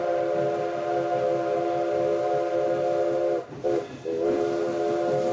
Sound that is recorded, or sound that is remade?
recorded